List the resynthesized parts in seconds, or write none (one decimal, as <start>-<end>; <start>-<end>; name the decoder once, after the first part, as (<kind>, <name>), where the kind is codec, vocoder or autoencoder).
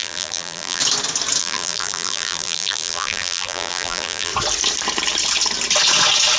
0.0-0.8 (vocoder, BigVGAN v2); 1.4-4.3